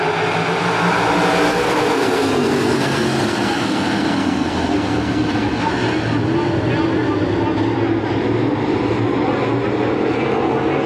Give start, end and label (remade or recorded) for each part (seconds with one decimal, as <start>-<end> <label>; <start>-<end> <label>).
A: 0.0-1.5 recorded; 1.5-5.7 remade; 5.7-10.9 recorded